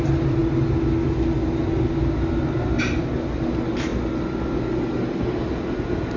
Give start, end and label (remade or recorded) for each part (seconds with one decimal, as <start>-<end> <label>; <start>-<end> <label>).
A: 0.0-6.2 recorded